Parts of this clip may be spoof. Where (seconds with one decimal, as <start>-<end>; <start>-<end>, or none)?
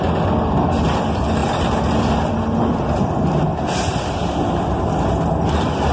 3.5-4.8